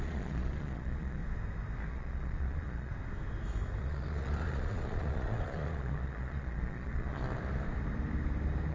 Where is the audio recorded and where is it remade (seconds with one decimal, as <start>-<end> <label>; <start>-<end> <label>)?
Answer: 0.0-1.2 remade; 1.2-1.9 recorded; 1.9-2.9 remade; 2.9-3.8 recorded; 3.8-7.2 remade; 7.2-8.7 recorded